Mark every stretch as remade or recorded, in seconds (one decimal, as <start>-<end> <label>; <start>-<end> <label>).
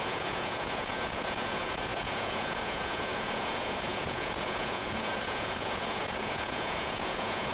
0.0-7.5 remade